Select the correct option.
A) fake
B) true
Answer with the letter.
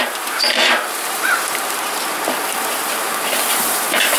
A